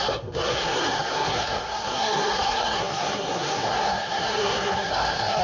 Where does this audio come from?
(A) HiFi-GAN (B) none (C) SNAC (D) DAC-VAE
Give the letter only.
C